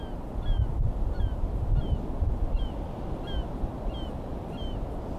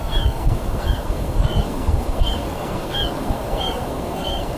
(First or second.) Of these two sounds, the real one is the first